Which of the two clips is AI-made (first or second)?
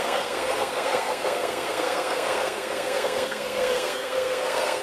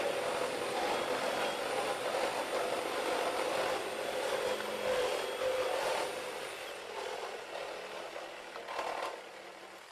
first